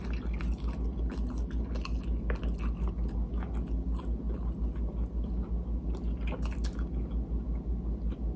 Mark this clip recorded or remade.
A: recorded